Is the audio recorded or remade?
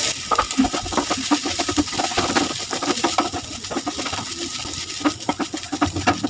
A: recorded